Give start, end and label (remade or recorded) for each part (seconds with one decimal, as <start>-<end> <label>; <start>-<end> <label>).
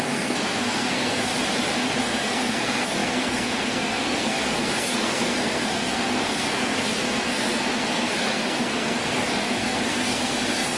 0.0-1.3 remade; 1.3-2.0 recorded; 2.0-10.8 remade